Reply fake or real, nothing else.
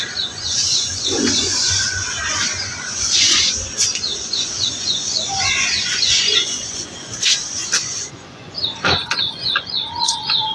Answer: fake